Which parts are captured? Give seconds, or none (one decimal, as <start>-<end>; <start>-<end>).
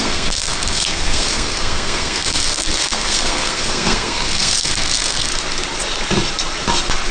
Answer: 5.3-7.1